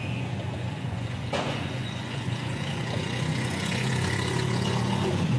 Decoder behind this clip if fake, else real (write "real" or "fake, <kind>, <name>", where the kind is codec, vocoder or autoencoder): fake, vocoder, Vocos